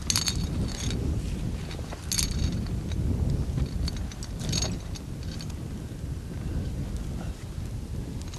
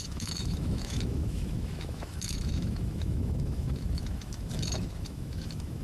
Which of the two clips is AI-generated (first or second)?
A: second